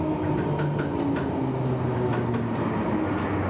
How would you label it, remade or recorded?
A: recorded